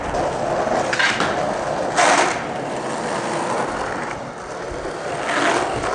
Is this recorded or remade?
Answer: recorded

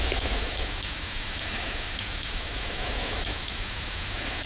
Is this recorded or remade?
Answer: remade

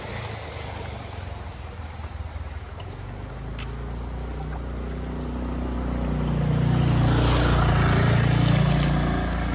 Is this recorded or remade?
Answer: recorded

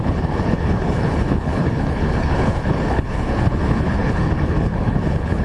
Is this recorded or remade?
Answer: remade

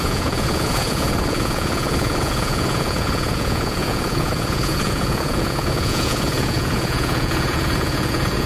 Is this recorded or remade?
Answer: remade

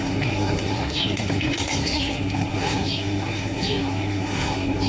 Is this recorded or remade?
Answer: remade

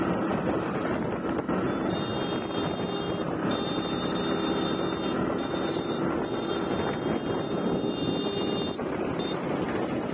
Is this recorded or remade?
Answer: recorded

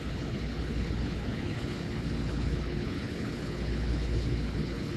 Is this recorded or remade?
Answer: remade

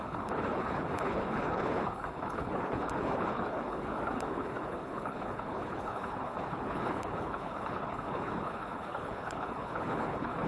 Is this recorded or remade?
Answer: remade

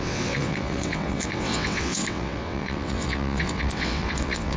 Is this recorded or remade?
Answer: remade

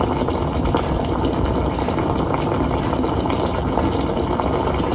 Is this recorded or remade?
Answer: recorded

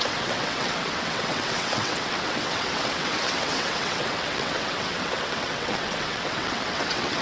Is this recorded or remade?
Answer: remade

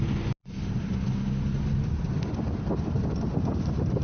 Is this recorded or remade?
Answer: recorded